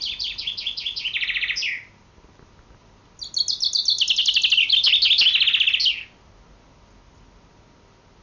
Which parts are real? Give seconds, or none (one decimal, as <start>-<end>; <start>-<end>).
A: 0.0-8.2